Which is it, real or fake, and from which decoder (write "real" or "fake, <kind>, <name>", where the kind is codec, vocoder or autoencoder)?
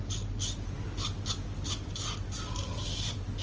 real